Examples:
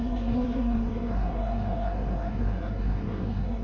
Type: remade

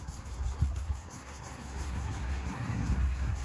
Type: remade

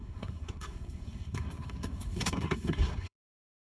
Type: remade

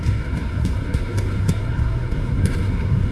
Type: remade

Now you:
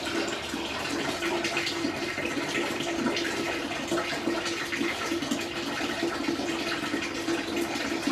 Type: recorded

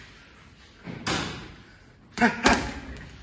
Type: recorded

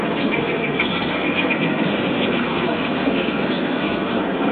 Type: remade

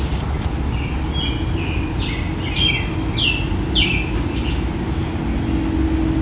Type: recorded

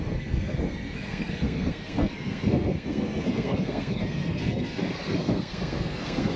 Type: remade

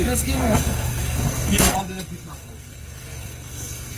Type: remade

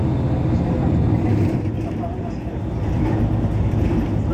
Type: recorded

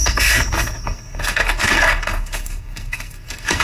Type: remade